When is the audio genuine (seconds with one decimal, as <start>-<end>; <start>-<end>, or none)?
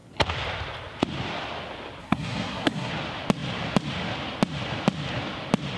0.0-2.0; 2.9-5.8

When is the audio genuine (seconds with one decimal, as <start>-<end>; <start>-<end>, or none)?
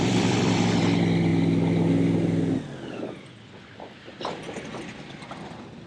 1.3-4.8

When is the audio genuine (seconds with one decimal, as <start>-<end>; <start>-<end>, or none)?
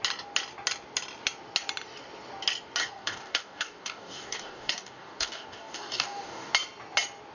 0.0-2.8; 6.5-7.3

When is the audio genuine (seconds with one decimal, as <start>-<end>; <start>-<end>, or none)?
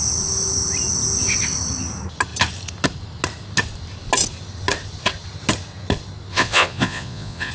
0.0-6.3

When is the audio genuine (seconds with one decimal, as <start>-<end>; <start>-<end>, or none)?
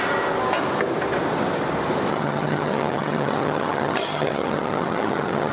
0.0-2.1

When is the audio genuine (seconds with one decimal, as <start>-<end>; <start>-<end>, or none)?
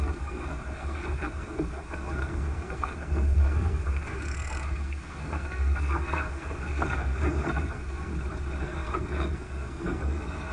8.1-8.6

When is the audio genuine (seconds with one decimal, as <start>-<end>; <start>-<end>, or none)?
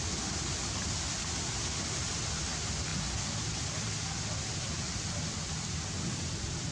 0.0-6.7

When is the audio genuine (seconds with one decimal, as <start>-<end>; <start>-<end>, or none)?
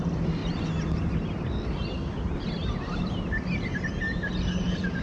0.0-5.0